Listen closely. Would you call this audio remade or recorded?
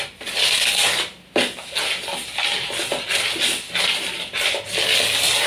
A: recorded